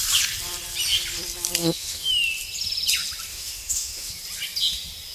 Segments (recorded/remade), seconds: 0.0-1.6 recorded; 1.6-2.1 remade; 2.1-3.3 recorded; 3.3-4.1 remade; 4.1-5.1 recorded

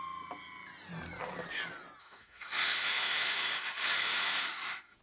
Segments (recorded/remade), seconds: 0.0-2.0 recorded; 2.0-5.0 remade

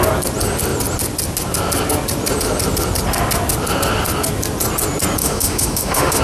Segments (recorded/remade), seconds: 0.0-5.2 recorded; 5.2-6.2 remade